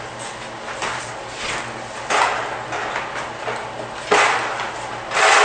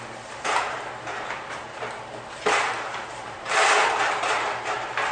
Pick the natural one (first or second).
first